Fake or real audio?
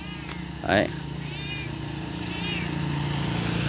real